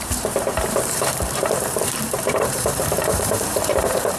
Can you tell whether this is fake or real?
fake